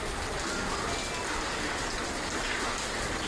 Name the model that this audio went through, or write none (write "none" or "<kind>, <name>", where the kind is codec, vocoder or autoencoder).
none